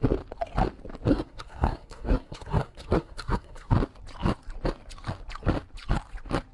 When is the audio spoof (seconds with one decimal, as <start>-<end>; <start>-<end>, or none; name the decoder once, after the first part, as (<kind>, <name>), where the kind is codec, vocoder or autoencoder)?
1.1-3.7 (codec, SNAC)